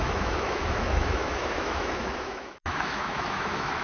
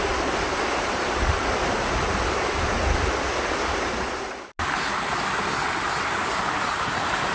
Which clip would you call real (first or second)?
second